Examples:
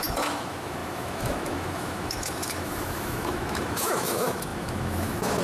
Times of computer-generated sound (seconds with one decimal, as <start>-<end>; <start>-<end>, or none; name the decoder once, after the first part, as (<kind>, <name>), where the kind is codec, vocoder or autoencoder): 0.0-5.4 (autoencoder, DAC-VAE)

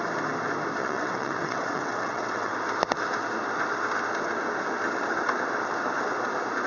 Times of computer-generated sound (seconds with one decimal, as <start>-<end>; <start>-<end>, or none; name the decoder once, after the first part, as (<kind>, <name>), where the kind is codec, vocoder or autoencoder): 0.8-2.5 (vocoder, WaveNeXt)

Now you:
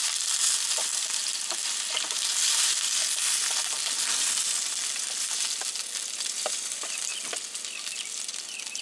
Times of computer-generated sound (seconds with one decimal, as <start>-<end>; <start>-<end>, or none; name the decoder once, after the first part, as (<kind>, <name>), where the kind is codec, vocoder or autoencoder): 0.0-1.3 (vocoder, BigVGAN v2); 1.9-2.7; 6.2-7.1; 8.3-8.8